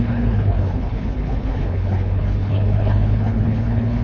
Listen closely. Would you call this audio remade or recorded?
remade